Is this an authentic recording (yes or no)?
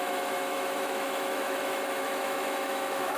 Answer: no